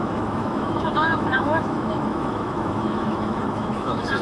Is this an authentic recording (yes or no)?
no